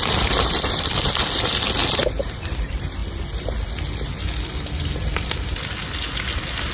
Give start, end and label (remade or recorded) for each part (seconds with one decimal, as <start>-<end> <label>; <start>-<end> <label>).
0.0-1.8 remade; 1.8-2.4 recorded; 2.4-3.0 remade; 3.0-5.0 recorded; 5.0-5.5 remade; 5.5-6.7 recorded